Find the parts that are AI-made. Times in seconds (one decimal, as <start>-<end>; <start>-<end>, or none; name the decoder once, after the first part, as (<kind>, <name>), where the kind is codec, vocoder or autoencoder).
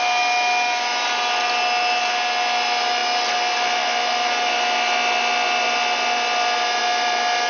none